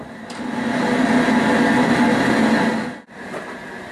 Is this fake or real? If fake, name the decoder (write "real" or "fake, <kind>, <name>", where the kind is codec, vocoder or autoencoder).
real